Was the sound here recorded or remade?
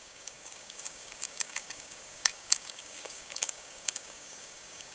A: remade